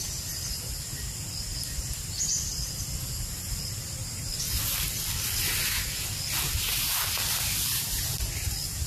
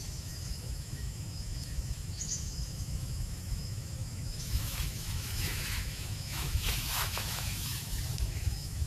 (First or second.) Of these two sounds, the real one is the first